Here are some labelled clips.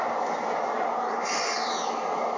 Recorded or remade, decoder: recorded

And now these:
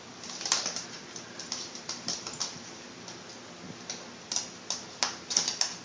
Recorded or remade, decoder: recorded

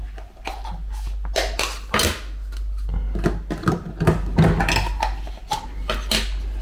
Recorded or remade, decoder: recorded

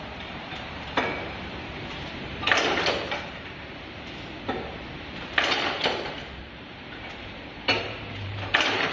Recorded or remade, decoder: remade, vocoder, BigVGAN v2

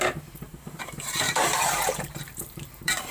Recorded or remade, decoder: remade, vocoder, BigVGAN v2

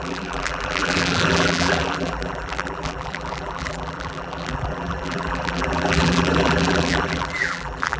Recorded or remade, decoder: remade, vocoder, BigVGAN v2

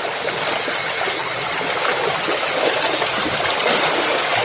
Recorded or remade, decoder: recorded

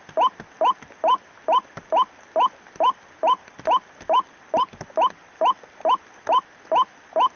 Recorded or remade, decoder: recorded